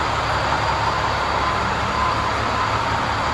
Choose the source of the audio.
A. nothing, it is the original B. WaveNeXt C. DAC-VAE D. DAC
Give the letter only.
A